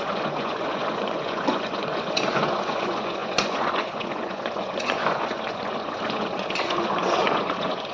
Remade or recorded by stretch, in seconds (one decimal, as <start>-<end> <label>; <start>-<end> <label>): 0.0-7.9 remade